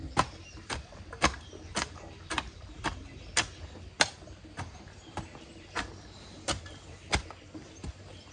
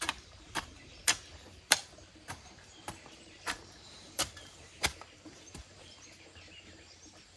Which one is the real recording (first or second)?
first